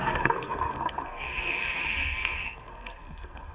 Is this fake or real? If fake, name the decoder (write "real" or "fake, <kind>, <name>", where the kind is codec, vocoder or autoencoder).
fake, codec, SNAC